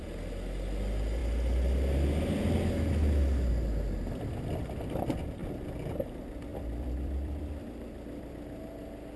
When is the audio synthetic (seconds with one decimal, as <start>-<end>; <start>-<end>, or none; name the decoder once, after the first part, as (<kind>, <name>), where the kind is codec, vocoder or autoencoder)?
5.4-6.0 (vocoder, BigVGAN v2); 6.5-8.3